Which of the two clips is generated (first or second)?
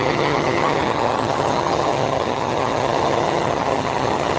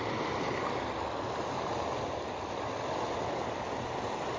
first